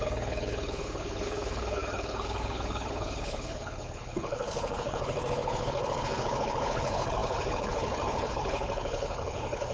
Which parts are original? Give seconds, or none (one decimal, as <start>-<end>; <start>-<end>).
none